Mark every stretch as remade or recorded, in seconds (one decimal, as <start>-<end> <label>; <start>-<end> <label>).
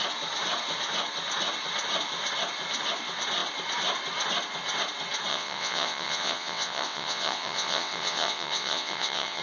0.0-5.3 recorded; 5.3-9.4 remade